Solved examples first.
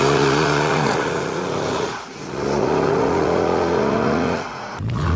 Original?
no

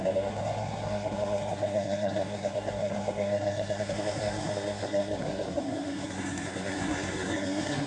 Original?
no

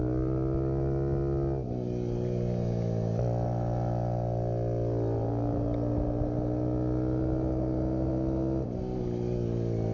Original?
yes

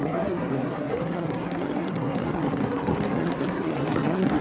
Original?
no